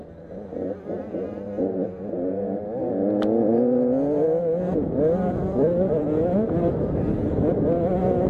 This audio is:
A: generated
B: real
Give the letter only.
B